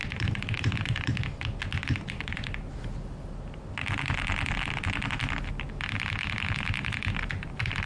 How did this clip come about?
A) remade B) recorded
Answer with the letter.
B